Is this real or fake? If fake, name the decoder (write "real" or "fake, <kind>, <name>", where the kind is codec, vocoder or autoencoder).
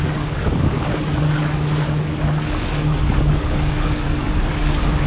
fake, codec, DAC